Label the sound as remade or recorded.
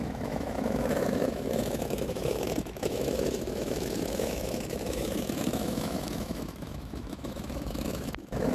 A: remade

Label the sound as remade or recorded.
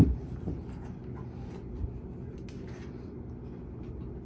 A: recorded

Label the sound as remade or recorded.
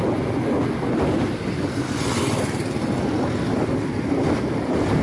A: recorded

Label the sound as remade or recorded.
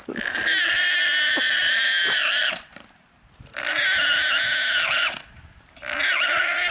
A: recorded